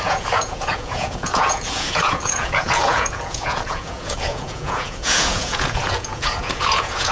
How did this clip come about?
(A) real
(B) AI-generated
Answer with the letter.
B